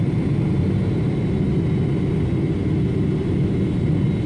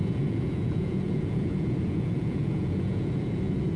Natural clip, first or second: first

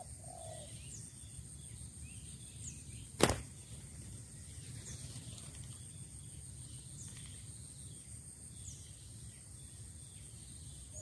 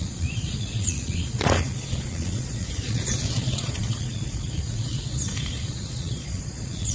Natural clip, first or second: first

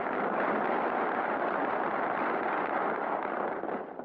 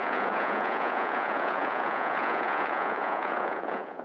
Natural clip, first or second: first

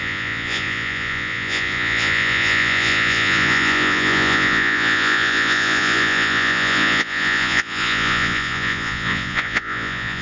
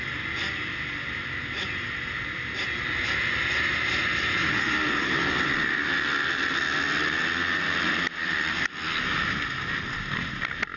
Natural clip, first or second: second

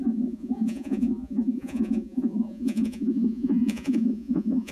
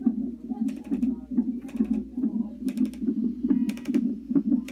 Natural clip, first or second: second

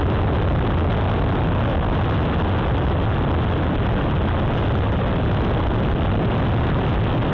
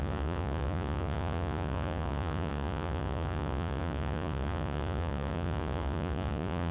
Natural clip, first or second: first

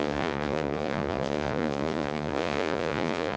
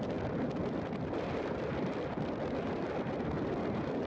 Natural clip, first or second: second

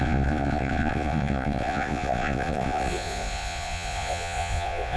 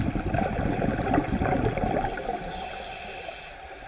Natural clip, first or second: second